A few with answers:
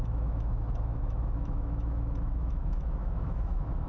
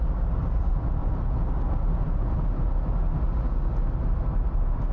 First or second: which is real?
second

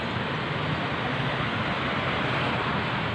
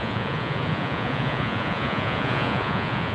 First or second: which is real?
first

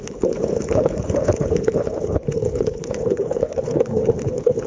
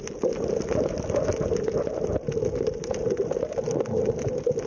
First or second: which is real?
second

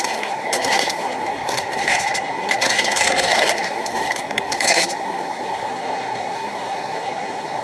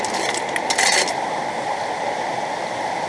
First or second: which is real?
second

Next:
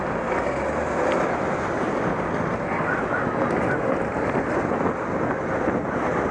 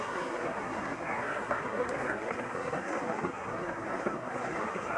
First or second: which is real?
first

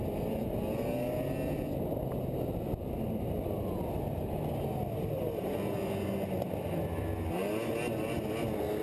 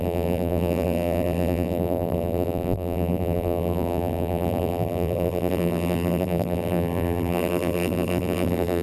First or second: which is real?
first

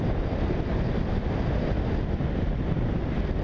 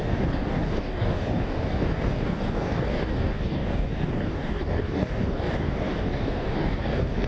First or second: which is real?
first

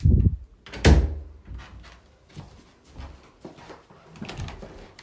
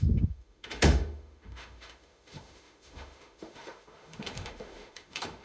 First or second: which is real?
first